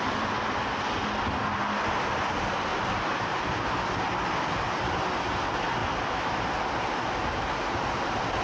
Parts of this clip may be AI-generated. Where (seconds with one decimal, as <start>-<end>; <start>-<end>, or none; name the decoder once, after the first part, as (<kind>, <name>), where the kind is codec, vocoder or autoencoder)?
none